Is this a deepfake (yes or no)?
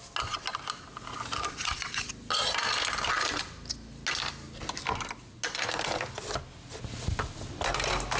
no